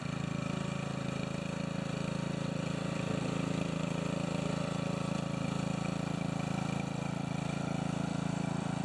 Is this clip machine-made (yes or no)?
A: yes